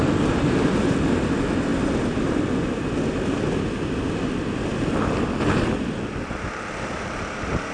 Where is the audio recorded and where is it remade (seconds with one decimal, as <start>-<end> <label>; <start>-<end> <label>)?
0.0-7.7 recorded